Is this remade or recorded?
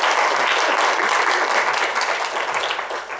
recorded